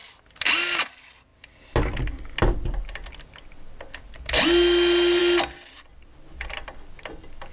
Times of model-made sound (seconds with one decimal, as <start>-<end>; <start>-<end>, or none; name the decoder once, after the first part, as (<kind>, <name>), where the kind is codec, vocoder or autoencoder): none